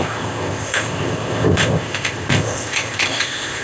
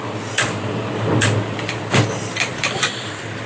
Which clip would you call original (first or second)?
second